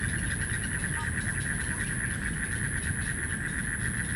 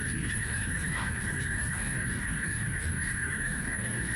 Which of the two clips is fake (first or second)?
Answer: second